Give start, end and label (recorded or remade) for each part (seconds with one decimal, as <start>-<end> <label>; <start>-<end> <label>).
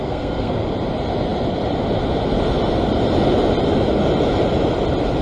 0.0-0.5 remade; 0.5-5.2 recorded